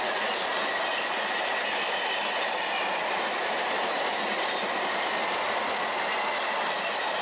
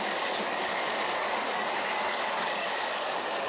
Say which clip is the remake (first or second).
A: second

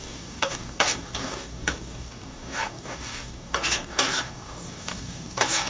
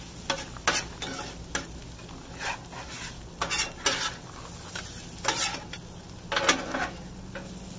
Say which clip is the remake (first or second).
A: first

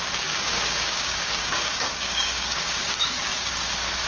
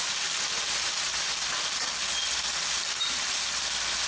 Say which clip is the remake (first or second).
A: first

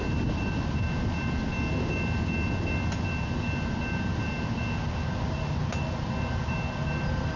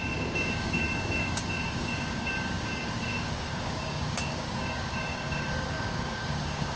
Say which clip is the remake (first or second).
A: second